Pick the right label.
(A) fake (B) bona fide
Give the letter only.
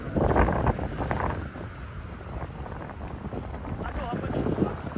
B